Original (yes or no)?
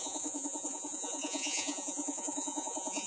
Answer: no